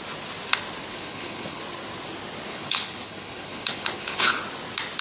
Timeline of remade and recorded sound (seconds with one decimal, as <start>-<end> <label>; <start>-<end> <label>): 0.0-0.9 recorded; 0.9-1.6 remade; 1.6-2.5 recorded; 2.5-4.4 remade; 4.4-5.0 recorded